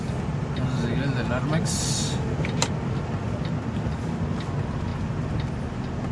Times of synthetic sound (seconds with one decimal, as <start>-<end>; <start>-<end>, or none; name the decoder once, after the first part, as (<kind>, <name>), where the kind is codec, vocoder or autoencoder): none